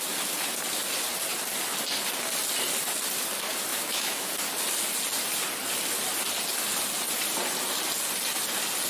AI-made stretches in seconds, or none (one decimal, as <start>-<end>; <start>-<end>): 3.7-4.3